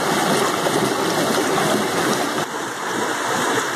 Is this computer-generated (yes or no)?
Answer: no